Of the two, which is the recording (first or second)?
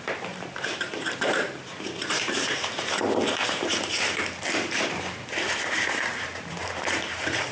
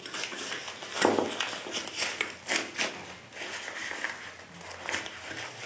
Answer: second